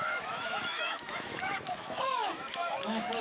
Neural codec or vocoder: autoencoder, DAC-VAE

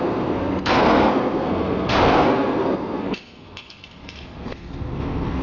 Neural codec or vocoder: codec, SNAC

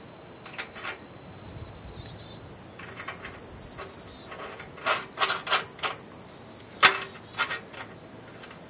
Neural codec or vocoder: none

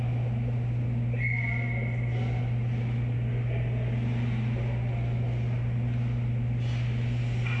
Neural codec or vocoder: none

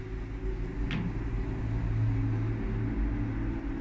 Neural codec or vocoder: none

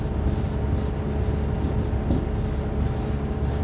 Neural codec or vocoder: none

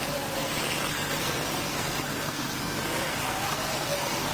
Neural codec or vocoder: codec, SNAC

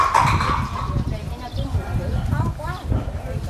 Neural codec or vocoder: none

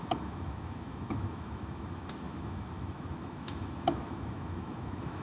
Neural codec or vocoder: autoencoder, DAC-VAE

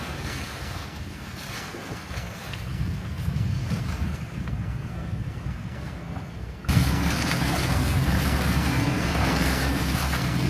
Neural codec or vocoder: codec, SNAC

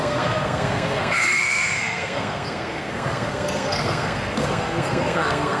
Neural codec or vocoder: codec, SNAC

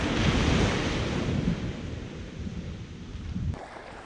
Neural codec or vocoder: none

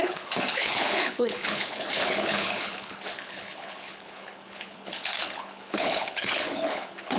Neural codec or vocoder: codec, HILCodec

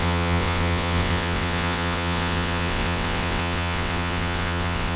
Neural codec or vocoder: vocoder, WaveNeXt